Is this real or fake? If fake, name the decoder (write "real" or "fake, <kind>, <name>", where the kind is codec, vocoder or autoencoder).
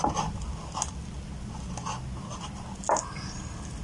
real